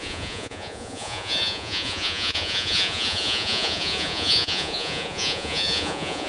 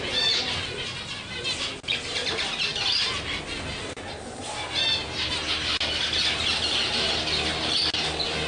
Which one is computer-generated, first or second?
first